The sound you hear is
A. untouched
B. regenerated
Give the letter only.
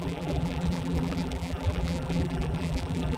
B